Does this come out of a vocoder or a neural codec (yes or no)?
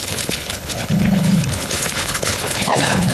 yes